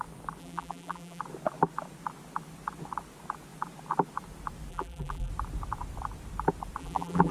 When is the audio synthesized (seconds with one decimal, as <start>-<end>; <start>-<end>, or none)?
0.4-1.2; 4.7-5.3; 6.8-7.3